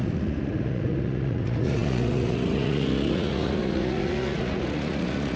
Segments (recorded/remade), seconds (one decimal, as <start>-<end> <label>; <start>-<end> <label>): 0.0-5.4 remade